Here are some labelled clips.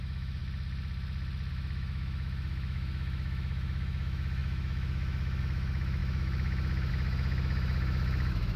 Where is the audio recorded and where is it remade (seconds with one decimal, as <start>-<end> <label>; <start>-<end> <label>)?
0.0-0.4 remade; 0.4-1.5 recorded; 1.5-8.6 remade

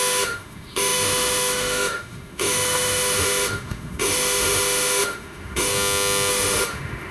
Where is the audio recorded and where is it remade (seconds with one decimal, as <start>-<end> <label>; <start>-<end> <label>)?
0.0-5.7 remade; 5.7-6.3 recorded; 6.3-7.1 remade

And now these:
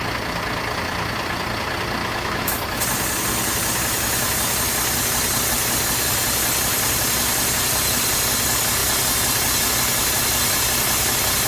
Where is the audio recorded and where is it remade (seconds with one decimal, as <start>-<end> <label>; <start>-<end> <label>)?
0.0-2.0 recorded; 2.0-2.5 remade; 2.5-11.5 recorded

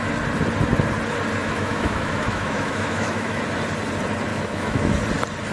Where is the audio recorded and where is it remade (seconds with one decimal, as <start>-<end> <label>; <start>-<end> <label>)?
0.0-1.4 recorded; 1.4-3.4 remade; 3.4-4.3 recorded; 4.3-4.9 remade; 4.9-5.5 recorded

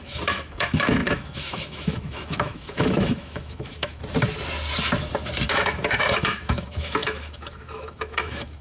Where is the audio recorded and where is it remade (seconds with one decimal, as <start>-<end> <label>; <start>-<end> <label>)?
0.0-4.0 remade; 4.0-5.5 recorded; 5.5-8.6 remade

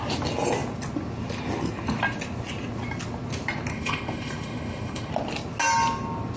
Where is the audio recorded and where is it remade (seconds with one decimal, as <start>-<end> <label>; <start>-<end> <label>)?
0.0-3.7 recorded; 3.7-5.1 remade; 5.1-6.4 recorded